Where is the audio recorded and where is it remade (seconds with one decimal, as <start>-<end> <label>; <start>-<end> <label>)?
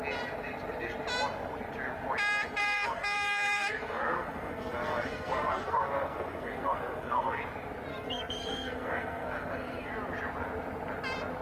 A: 0.0-2.6 recorded; 2.6-7.4 remade; 7.4-7.9 recorded; 7.9-9.9 remade; 9.9-11.4 recorded